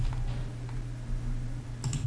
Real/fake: real